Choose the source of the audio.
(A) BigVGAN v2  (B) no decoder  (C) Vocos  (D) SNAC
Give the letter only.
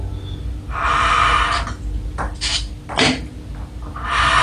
B